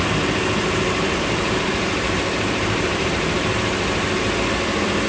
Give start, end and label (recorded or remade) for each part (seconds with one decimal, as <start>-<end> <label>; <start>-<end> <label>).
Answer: 0.0-0.6 recorded; 0.6-3.7 remade; 3.7-5.1 recorded

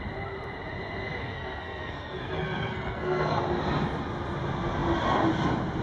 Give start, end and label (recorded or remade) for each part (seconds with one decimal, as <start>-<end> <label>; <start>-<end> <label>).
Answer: 0.0-1.2 recorded; 1.2-3.4 remade; 3.4-5.8 recorded

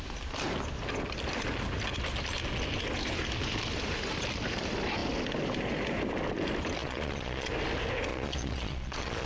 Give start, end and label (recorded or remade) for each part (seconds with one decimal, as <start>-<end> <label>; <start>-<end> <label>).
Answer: 0.0-6.8 recorded; 6.8-7.5 remade; 7.5-8.1 recorded; 8.1-9.3 remade

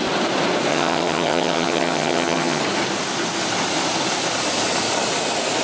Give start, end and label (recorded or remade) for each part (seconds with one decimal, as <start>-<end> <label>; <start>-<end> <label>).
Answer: 0.0-0.7 recorded; 0.7-2.6 remade; 2.6-5.6 recorded

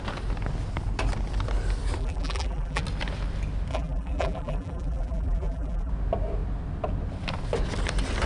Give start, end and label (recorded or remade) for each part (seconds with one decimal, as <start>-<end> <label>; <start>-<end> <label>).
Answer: 0.0-2.0 recorded; 2.0-2.8 remade; 2.8-3.7 recorded; 3.7-5.9 remade; 5.9-8.3 recorded

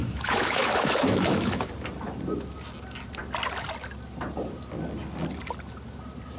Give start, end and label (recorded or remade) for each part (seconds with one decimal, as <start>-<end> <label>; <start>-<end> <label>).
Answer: 0.0-1.7 remade; 1.7-6.4 recorded

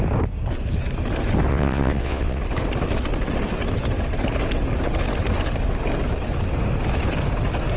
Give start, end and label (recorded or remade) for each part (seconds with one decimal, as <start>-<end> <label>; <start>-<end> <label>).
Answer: 0.0-1.5 recorded; 1.5-2.4 remade; 2.4-7.8 recorded

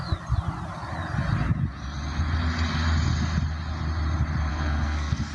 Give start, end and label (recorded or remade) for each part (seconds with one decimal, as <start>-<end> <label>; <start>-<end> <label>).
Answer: 0.0-4.5 recorded; 4.5-5.3 remade